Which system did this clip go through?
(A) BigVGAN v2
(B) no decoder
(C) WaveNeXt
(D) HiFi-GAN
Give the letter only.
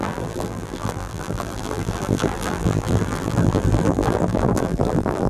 A